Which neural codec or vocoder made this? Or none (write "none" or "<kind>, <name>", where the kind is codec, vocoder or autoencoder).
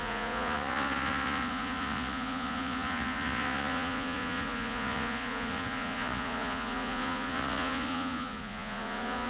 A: vocoder, Vocos